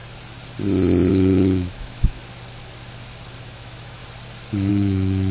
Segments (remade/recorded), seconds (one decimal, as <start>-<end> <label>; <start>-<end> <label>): 0.0-1.1 recorded; 1.1-2.2 remade; 2.2-3.4 recorded; 3.4-4.0 remade; 4.0-4.7 recorded; 4.7-5.3 remade